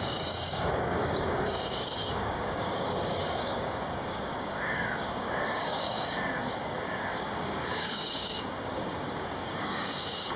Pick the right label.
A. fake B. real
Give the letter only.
A